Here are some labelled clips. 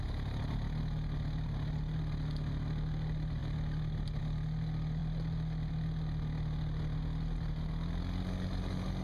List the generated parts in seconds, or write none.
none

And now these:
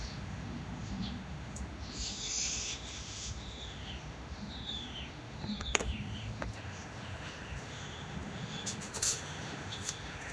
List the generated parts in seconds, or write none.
0.0-10.3

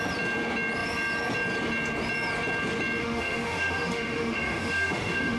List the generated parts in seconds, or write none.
3.0-5.4

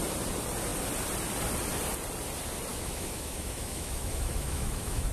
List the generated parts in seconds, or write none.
2.7-5.1

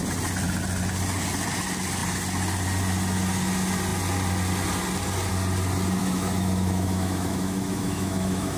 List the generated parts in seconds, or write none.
6.0-8.6